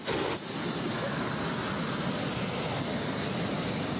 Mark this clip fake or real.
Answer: real